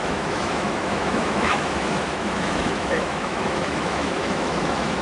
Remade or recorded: remade